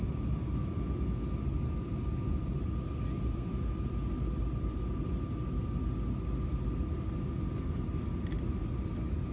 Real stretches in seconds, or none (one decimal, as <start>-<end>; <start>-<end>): 0.0-0.6; 1.2-9.3